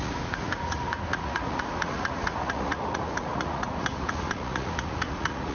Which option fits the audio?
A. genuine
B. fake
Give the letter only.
B